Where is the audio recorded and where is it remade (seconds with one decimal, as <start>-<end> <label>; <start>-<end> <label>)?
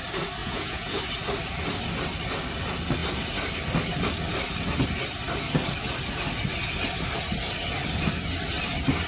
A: 0.0-0.4 recorded; 0.4-1.0 remade; 1.0-9.1 recorded